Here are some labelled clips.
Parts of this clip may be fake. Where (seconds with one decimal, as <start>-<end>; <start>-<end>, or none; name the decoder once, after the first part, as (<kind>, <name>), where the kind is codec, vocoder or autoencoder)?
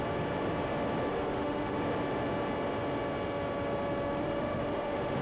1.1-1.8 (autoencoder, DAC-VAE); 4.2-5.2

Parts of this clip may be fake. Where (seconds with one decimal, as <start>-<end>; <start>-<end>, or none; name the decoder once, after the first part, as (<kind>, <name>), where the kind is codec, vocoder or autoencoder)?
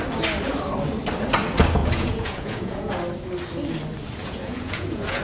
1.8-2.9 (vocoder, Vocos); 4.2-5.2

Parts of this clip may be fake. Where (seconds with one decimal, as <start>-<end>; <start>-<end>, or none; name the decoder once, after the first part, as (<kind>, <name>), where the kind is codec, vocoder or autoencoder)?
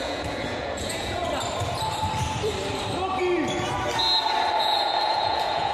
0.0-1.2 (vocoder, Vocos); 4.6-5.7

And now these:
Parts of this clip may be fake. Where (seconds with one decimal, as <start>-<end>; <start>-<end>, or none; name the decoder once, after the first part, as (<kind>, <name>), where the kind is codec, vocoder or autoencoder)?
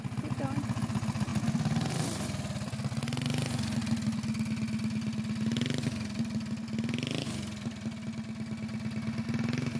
none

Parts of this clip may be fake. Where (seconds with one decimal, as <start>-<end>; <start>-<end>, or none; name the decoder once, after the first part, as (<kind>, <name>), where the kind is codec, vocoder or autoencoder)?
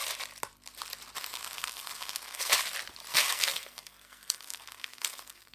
1.2-2.5 (codec, SNAC); 3.1-5.5